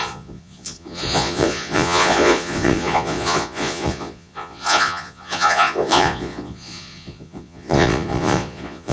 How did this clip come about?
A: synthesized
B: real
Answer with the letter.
A